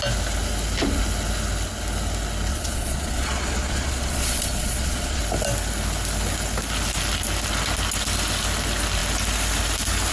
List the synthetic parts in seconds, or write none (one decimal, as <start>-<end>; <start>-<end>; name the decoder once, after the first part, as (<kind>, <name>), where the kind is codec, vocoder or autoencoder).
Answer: 2.5-5.2 (vocoder, Vocos)